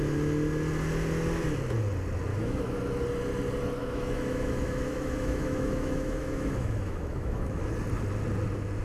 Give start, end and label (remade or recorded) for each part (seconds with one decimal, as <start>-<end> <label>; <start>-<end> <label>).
0.0-2.3 recorded; 2.3-2.8 remade; 2.8-3.8 recorded; 3.8-7.7 remade; 7.7-8.8 recorded